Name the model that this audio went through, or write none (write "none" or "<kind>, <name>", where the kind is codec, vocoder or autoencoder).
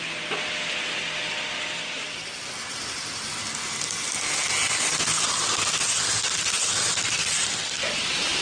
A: none